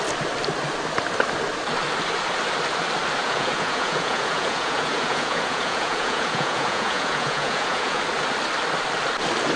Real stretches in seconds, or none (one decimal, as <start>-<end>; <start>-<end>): 0.0-3.2; 8.0-9.6